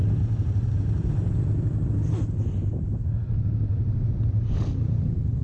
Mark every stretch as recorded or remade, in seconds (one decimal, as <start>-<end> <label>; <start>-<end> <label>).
0.0-1.1 remade; 1.1-2.6 recorded; 2.6-3.1 remade; 3.1-5.4 recorded